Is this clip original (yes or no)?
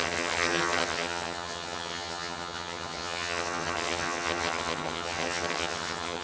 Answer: no